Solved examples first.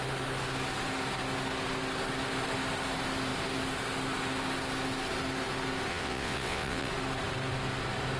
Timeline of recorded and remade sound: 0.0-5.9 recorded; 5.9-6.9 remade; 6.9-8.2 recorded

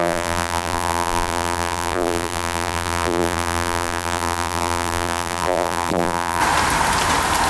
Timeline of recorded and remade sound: 0.0-6.4 remade; 6.4-7.5 recorded

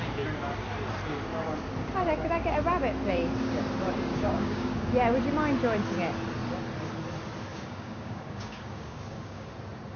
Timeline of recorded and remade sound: 0.0-4.1 recorded; 4.1-4.9 remade; 4.9-7.5 recorded; 7.5-9.5 remade; 9.5-10.0 recorded

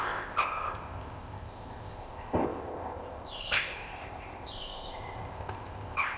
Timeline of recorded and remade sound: 0.0-6.2 remade

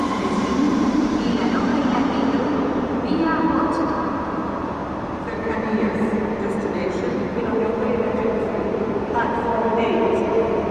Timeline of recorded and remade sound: 0.0-10.7 remade